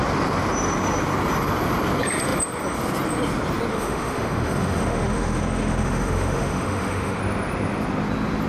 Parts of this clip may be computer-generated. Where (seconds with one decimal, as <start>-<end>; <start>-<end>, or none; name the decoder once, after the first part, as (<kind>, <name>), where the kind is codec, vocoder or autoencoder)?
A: 3.7-7.2 (autoencoder, DAC-VAE)